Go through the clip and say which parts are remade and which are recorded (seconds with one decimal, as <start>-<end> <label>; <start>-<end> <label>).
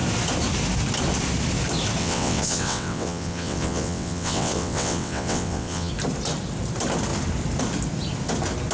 0.0-2.0 recorded; 2.0-5.9 remade; 5.9-8.7 recorded